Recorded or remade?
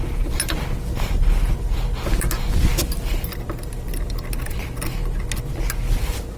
recorded